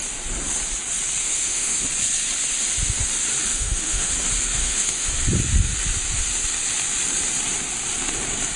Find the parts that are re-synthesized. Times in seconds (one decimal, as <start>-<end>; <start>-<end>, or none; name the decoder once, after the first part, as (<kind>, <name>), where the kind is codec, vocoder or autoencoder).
1.2-1.8 (autoencoder, DAC-VAE); 3.5-4.1; 4.6-5.1